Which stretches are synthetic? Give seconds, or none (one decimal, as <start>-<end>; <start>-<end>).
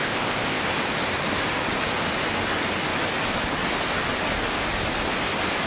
0.0-0.6